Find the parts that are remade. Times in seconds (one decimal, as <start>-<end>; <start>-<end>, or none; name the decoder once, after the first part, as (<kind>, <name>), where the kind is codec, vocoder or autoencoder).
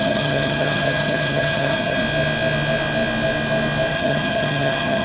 0.0-2.0 (vocoder, HiFi-GAN); 3.9-5.0